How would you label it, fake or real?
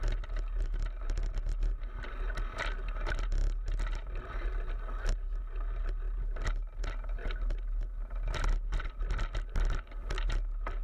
real